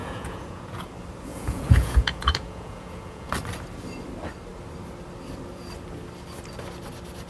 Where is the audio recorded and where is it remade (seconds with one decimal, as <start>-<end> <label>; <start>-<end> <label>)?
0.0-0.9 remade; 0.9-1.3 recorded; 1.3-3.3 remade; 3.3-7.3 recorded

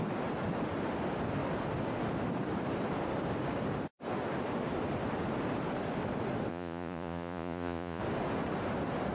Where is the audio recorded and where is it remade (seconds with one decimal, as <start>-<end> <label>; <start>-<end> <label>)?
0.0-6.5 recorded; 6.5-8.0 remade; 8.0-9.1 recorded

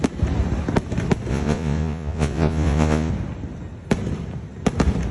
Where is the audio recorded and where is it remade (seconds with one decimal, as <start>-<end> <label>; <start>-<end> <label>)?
0.0-1.3 recorded; 1.3-3.1 remade; 3.1-5.1 recorded

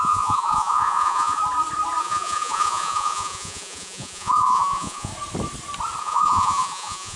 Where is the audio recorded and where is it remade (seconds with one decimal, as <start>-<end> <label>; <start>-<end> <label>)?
0.0-1.4 remade; 1.4-2.0 recorded; 2.0-5.1 remade; 5.1-6.0 recorded; 6.0-7.2 remade

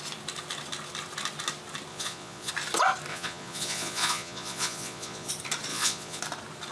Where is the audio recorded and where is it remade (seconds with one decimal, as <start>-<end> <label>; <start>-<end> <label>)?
0.0-1.9 recorded; 1.9-2.5 remade; 2.5-3.1 recorded; 3.1-5.3 remade; 5.3-5.7 recorded; 5.7-6.2 remade; 6.2-6.7 recorded